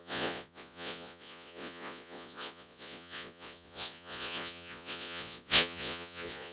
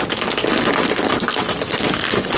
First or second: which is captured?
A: second